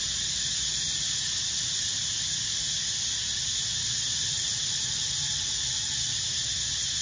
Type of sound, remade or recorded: recorded